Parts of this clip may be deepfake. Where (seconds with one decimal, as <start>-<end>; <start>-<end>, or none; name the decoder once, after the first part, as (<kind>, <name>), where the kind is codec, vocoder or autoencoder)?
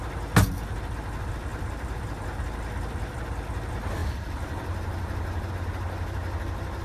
1.5-3.2 (vocoder, BigVGAN v2); 4.0-5.5